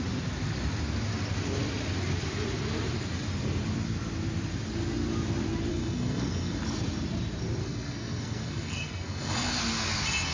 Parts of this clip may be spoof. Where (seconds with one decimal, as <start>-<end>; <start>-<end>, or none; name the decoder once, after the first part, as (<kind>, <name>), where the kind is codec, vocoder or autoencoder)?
5.7-6.6 (codec, SNAC); 7.6-9.6